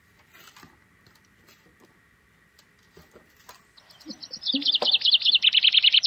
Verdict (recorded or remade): recorded